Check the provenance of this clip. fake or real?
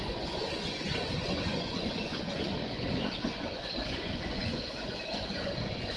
fake